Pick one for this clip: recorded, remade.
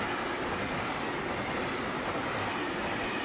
recorded